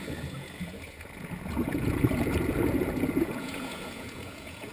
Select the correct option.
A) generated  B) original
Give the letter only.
A